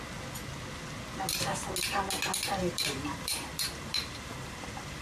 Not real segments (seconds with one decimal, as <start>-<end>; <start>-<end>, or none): 2.6-5.0